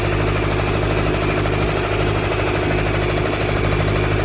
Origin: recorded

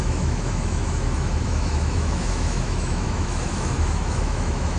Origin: remade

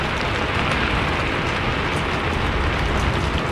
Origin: recorded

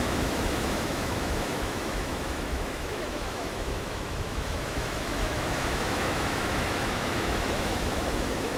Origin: remade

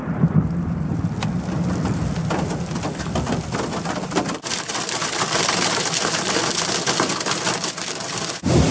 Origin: recorded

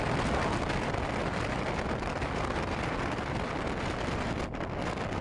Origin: recorded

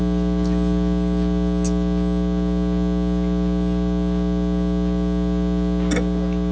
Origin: recorded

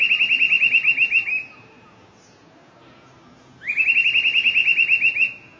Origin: recorded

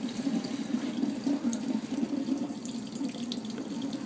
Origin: recorded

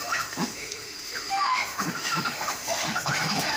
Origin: remade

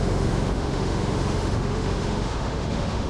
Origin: remade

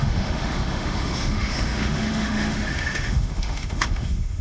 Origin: remade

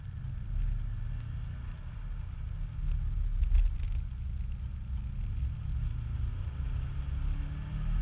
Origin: recorded